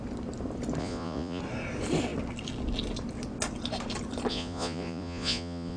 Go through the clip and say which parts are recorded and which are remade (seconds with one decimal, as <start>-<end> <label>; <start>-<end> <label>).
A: 0.0-0.8 recorded; 0.8-1.4 remade; 1.4-4.3 recorded; 4.3-5.8 remade